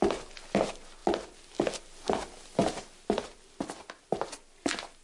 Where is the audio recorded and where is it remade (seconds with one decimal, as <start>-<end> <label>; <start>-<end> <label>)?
0.0-5.0 recorded